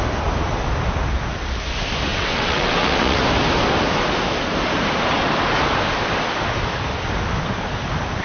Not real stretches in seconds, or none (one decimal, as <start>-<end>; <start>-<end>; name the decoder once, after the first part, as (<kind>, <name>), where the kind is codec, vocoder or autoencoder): 2.1-3.2 (vocoder, WaveNeXt)